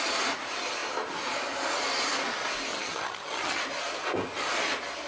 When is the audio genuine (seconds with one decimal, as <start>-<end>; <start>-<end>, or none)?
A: 0.0-2.7; 3.6-5.1